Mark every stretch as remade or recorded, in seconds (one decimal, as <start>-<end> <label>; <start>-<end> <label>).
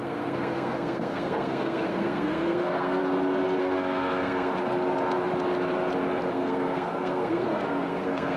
0.0-3.0 remade; 3.0-3.6 recorded; 3.6-4.5 remade; 4.5-6.3 recorded; 6.3-8.4 remade